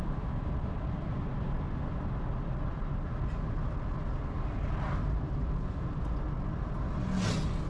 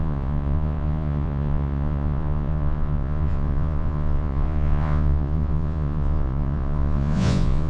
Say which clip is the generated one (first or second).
second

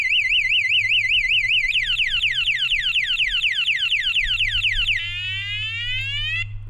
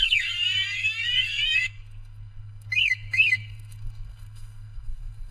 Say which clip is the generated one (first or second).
second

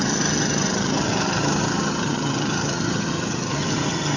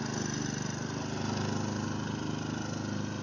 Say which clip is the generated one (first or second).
first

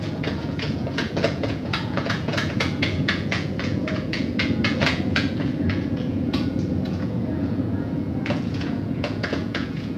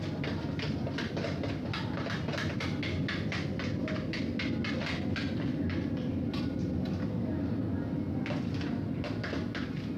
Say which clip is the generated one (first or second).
first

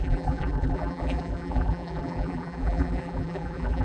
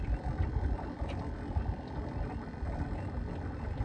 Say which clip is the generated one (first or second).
first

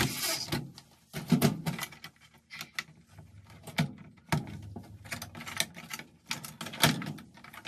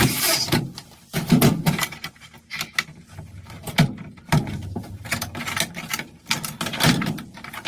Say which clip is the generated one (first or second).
second